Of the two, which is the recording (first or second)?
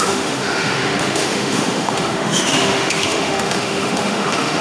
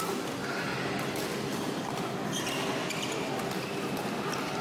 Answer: second